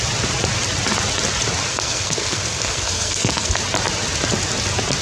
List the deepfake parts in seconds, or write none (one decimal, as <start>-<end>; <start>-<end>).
1.7-3.6